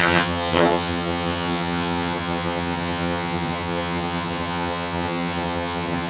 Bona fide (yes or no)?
no